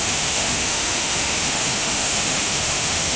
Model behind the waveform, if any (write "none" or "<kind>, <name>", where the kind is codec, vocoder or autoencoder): autoencoder, DAC-VAE